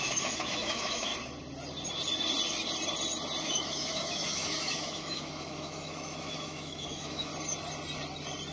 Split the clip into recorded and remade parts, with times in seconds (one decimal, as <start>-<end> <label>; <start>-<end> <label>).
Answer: 0.0-1.1 remade; 1.1-3.4 recorded; 3.4-7.3 remade; 7.3-8.5 recorded